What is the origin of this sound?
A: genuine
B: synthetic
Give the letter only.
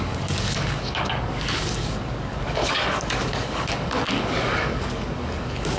B